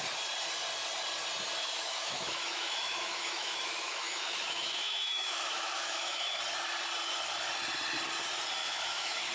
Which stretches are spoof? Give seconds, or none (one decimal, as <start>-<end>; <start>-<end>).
1.6-6.4; 8.6-9.3